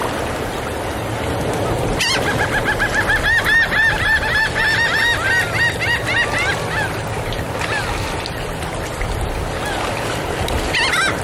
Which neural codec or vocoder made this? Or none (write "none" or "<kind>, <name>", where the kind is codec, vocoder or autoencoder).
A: none